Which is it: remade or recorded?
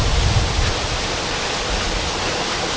recorded